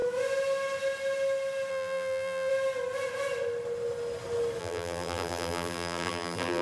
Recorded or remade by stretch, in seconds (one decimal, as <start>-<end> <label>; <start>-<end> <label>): 0.0-1.7 recorded; 1.7-2.5 remade; 2.5-4.6 recorded; 4.6-6.6 remade